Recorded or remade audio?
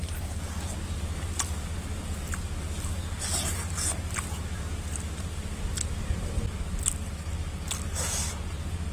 recorded